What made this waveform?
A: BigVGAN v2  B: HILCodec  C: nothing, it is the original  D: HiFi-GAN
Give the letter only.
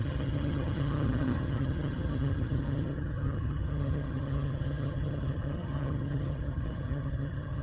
D